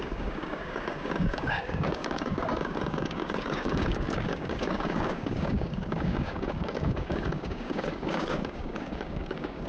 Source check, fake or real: fake